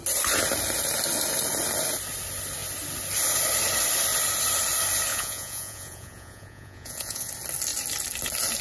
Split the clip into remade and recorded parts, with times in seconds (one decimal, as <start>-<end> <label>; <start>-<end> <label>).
0.0-5.1 recorded; 5.1-7.3 remade; 7.3-8.6 recorded